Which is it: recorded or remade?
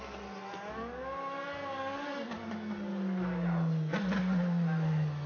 recorded